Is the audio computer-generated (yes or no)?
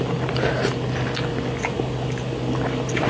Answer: no